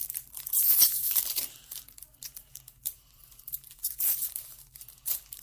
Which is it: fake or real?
fake